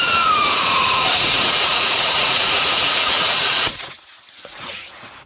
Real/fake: fake